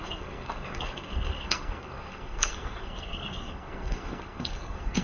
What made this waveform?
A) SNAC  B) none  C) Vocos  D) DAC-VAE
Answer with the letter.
A